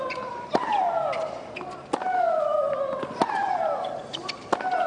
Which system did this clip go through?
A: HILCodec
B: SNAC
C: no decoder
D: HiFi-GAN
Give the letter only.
C